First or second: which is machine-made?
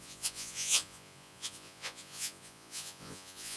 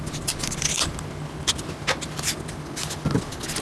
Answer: first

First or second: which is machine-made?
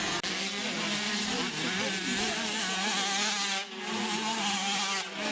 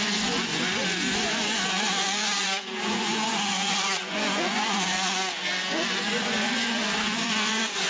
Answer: second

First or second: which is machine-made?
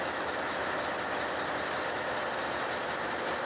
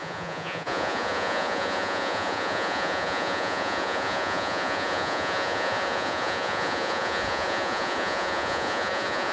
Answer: second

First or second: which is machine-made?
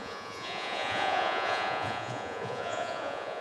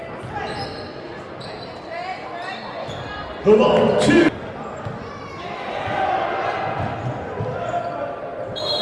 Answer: first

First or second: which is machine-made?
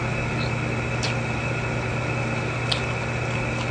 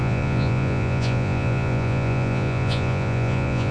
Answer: second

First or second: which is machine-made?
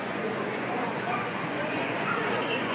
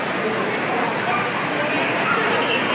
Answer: first